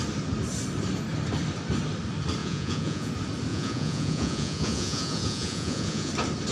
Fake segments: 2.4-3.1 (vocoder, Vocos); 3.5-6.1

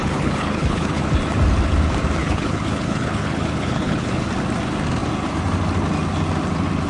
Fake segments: 0.0-1.0 (codec, HILCodec); 2.2-4.3

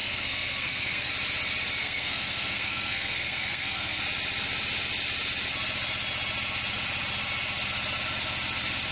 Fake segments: 0.0-1.1 (codec, SNAC); 1.8-4.0

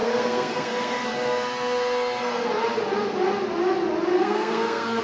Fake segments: 0.0-2.6 (codec, SNAC); 4.1-5.0